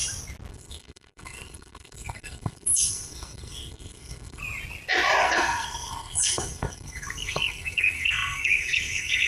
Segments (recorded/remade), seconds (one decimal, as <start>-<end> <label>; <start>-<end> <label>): 0.0-0.5 recorded; 0.5-4.4 remade; 4.4-5.2 recorded; 5.2-9.3 remade